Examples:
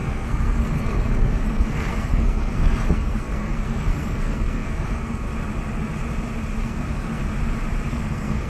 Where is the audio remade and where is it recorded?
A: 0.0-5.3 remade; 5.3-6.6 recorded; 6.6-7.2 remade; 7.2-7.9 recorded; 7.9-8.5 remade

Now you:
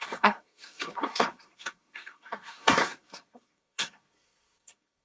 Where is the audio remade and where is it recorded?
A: 0.0-5.0 remade